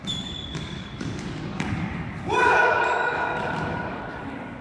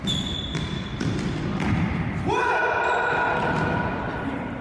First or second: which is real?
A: second